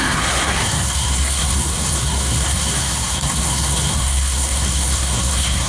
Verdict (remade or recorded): remade